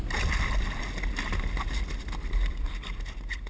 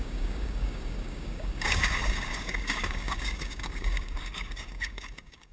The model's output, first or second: second